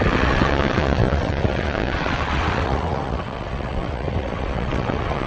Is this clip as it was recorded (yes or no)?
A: no